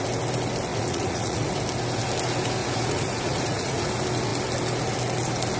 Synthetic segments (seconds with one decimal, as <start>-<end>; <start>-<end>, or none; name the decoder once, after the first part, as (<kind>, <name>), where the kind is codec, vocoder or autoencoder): 0.7-1.6 (vocoder, Vocos); 2.6-3.9